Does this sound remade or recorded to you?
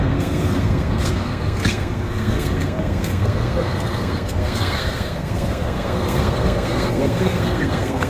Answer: remade